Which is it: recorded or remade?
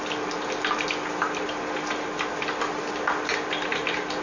recorded